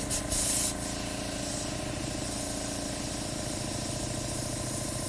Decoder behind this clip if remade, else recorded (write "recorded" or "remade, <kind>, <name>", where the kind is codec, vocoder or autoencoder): recorded